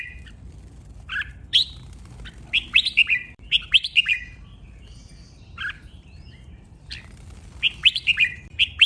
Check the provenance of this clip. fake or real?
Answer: fake